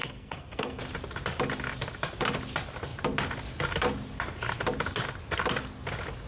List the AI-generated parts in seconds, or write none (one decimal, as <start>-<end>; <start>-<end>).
0.0-0.8